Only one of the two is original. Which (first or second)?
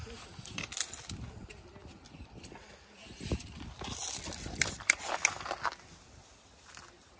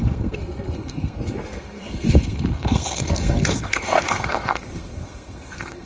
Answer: first